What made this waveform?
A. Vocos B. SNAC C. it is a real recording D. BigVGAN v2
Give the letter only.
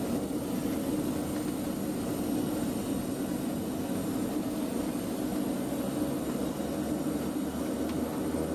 C